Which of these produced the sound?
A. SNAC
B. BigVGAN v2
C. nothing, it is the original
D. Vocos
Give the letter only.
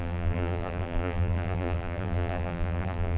B